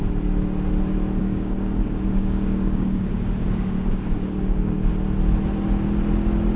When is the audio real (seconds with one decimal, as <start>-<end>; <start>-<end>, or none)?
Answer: 0.0-1.2; 4.9-6.6